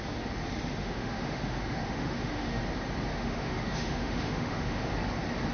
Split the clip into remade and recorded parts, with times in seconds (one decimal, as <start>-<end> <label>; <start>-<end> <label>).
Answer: 0.0-0.8 recorded; 0.8-2.6 remade; 2.6-3.1 recorded; 3.1-4.9 remade; 4.9-5.5 recorded